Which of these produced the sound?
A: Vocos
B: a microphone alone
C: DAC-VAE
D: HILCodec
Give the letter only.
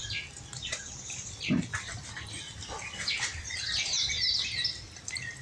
B